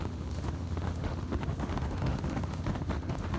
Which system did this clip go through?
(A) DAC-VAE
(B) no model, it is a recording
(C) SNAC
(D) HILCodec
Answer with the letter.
A